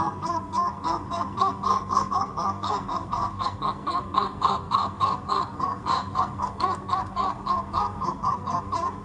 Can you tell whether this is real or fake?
fake